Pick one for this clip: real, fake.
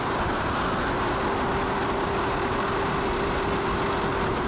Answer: real